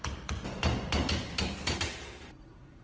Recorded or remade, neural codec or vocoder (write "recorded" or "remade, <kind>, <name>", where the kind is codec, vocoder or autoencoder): remade, vocoder, BigVGAN v2